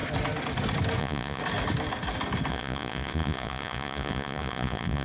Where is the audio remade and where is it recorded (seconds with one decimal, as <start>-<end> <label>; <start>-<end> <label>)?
0.0-1.0 recorded; 1.0-1.4 remade; 1.4-2.5 recorded; 2.5-5.0 remade